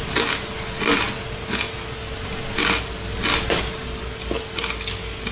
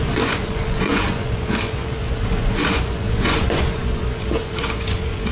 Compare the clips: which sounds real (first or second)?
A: first